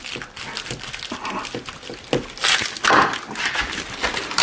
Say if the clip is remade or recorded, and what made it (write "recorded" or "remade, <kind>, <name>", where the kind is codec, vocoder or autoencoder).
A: remade, vocoder, BigVGAN v2